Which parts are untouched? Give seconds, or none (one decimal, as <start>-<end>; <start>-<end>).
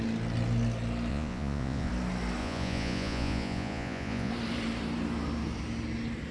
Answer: 0.0-1.1; 1.9-2.4; 4.3-6.3